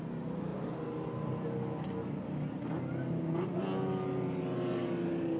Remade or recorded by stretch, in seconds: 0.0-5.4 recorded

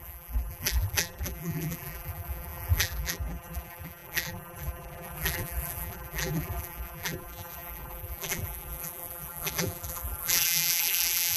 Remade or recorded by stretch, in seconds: 0.0-11.4 remade

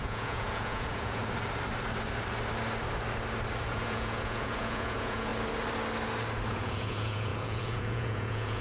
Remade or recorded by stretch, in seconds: 0.0-1.2 remade; 1.2-3.7 recorded; 3.7-5.3 remade; 5.3-6.5 recorded; 6.5-8.6 remade

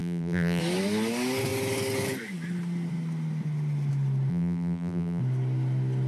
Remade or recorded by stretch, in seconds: 0.0-0.6 remade; 0.6-4.3 recorded; 4.3-5.2 remade; 5.2-6.1 recorded

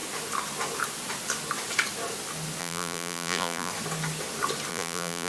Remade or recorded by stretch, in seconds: 0.0-2.6 recorded; 2.6-3.7 remade; 3.7-4.7 recorded; 4.7-5.3 remade

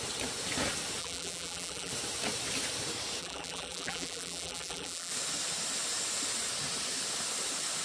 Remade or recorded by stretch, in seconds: 0.0-1.0 recorded; 1.0-1.9 remade; 1.9-3.2 recorded; 3.2-5.1 remade; 5.1-7.8 recorded